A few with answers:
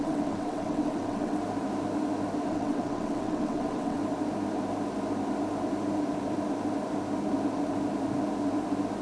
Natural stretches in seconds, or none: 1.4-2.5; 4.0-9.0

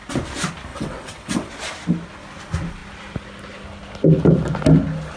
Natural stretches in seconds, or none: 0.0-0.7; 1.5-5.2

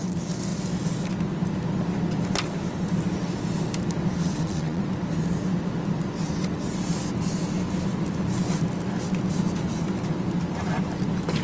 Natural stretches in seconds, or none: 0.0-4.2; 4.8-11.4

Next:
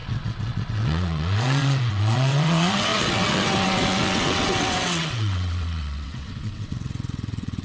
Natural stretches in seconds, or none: none